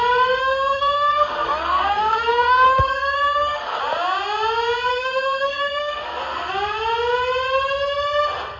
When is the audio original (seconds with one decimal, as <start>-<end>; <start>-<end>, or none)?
0.0-0.4; 3.8-4.9; 6.5-8.6